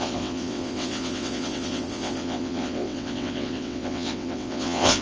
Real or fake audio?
fake